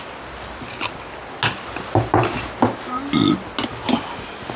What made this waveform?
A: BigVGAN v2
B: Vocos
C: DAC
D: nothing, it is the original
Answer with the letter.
D